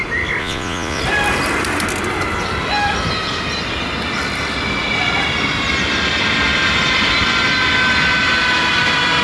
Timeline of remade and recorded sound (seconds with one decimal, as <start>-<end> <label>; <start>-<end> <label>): 0.0-0.4 recorded; 0.4-1.0 remade; 1.0-9.2 recorded